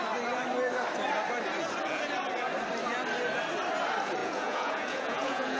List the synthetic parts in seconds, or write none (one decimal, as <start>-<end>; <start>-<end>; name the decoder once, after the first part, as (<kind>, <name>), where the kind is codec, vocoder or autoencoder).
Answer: 4.2-5.6 (vocoder, Vocos)